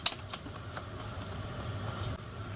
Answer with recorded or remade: recorded